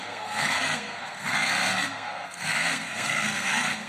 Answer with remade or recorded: remade